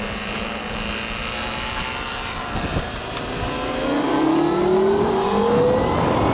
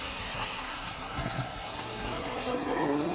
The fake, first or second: second